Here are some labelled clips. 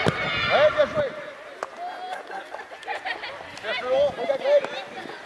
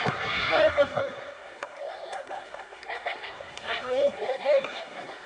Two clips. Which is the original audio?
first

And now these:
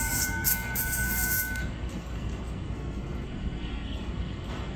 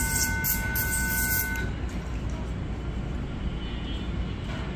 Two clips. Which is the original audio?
second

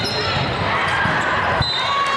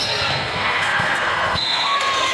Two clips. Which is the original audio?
first